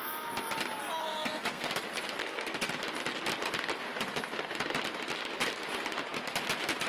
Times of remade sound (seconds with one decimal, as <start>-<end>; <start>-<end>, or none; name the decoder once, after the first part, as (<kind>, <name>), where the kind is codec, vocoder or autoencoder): 1.0-1.7 (codec, SNAC); 2.2-2.7